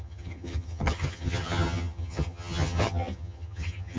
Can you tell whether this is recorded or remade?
remade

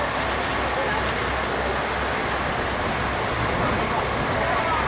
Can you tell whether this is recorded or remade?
recorded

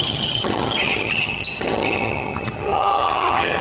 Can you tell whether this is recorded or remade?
remade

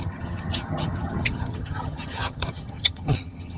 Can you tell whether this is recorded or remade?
remade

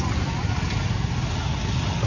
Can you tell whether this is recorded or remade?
recorded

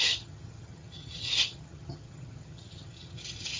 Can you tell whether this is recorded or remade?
remade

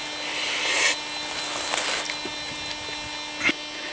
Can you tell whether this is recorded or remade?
recorded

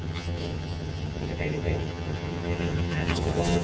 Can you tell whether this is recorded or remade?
remade